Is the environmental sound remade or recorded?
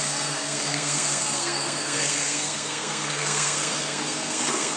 remade